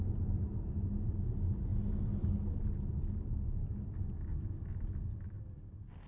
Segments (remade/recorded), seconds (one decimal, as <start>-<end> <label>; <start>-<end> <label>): 0.0-6.1 recorded